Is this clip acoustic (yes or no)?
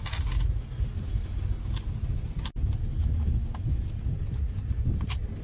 yes